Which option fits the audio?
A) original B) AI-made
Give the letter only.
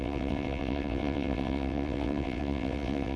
B